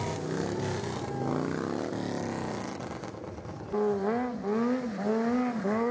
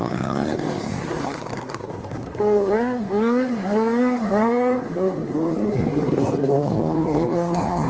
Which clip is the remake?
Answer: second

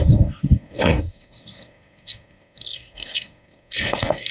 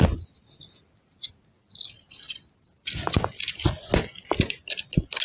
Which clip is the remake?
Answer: first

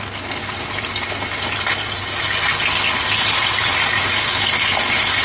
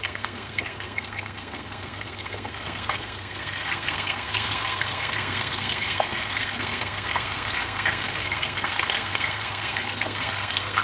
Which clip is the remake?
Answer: second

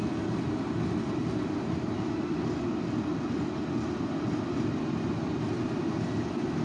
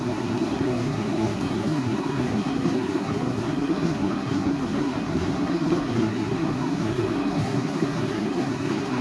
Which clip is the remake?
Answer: second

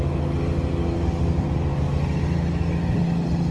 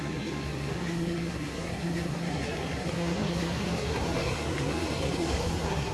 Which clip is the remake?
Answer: second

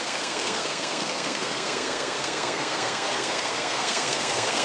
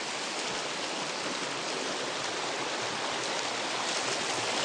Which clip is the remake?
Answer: first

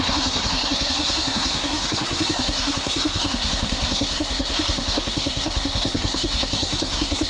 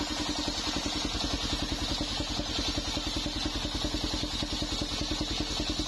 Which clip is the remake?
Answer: first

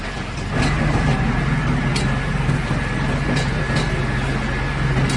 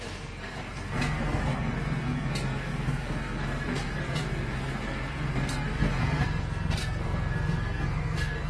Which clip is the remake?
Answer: second